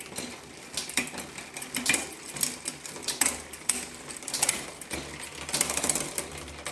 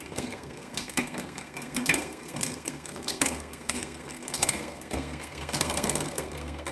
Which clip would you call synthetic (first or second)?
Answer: second